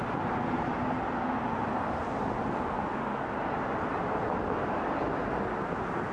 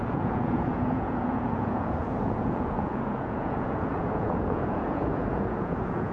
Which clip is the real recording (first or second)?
first